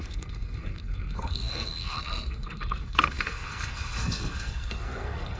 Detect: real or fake fake